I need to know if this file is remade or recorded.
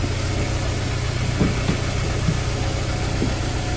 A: recorded